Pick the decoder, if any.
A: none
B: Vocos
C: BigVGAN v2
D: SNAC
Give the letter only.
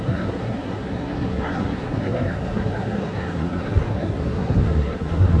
D